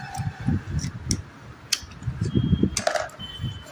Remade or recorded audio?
recorded